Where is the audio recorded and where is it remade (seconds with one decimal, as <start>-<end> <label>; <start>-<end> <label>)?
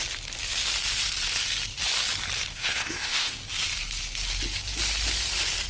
0.0-2.5 recorded; 2.5-3.4 remade; 3.4-5.7 recorded